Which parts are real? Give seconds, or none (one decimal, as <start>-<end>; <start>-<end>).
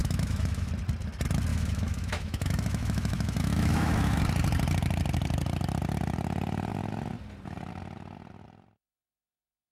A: 0.7-1.5; 4.2-9.7